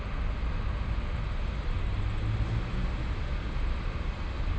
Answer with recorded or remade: recorded